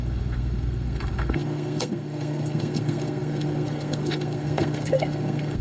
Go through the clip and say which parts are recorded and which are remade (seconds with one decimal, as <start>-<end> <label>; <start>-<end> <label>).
0.0-5.6 remade